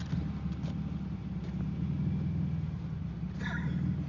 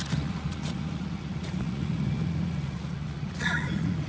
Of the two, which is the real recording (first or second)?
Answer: first